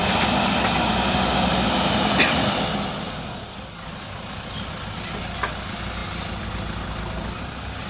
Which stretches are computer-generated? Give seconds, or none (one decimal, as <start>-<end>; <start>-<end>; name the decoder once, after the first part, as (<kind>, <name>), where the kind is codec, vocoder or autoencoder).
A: none